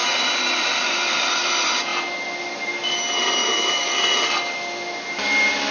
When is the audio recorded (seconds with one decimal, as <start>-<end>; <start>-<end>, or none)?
0.0-3.4; 3.9-5.7